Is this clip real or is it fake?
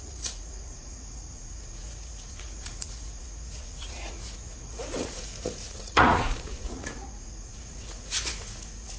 fake